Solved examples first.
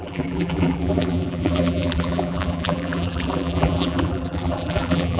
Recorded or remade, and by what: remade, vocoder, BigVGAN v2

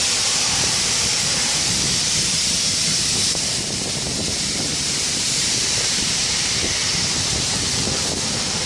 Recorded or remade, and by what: remade, vocoder, BigVGAN v2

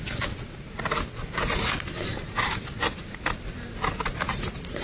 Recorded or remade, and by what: recorded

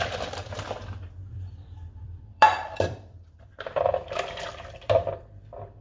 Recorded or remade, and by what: remade, vocoder, BigVGAN v2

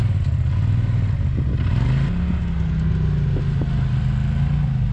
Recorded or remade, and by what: recorded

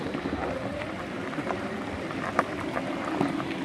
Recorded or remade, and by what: remade, vocoder, BigVGAN v2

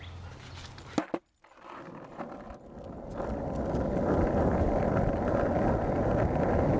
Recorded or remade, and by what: recorded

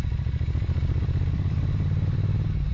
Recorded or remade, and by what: remade, vocoder, BigVGAN v2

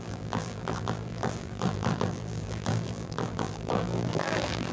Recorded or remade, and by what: remade, vocoder, BigVGAN v2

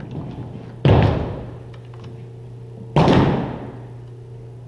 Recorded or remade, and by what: recorded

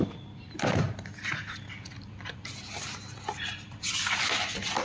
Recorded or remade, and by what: recorded